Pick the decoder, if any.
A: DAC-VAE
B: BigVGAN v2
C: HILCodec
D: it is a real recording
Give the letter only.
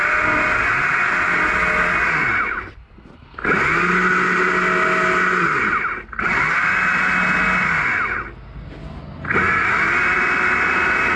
D